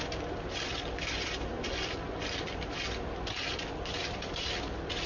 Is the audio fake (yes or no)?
yes